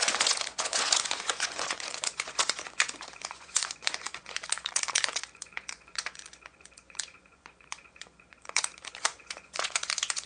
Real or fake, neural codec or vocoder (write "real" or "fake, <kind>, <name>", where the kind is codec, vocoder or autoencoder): fake, vocoder, Vocos